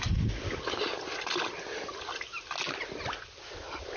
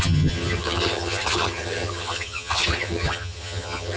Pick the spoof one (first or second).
second